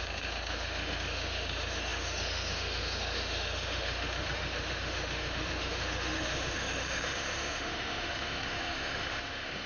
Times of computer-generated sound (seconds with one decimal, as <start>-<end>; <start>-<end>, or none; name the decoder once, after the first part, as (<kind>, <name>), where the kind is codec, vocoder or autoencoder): 0.0-9.7 (autoencoder, DAC-VAE)